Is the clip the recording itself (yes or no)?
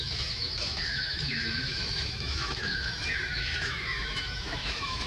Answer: no